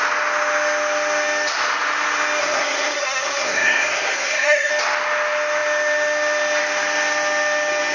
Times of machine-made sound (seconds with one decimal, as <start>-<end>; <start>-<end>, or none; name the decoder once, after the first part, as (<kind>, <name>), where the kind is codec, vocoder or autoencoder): 2.4-4.7 (codec, SNAC)